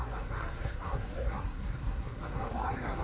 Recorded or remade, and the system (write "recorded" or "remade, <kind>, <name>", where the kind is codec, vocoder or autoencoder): remade, codec, SNAC